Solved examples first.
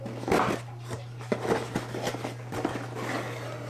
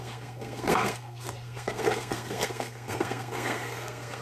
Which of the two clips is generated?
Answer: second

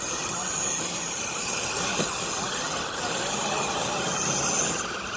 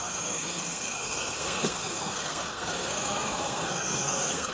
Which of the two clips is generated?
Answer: second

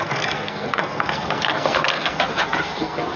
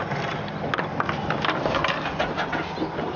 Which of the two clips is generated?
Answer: first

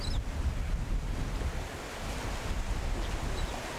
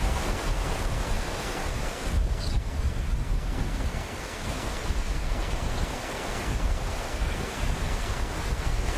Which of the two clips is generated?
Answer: second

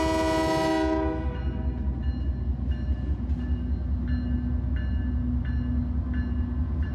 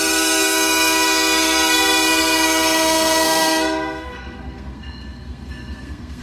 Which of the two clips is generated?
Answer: second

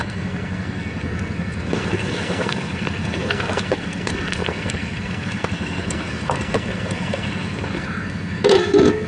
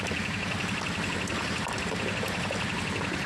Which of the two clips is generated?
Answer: first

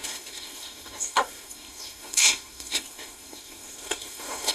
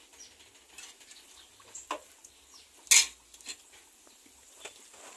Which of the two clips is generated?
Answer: first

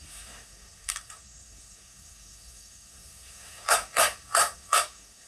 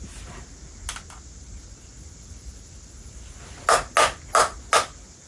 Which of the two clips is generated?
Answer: first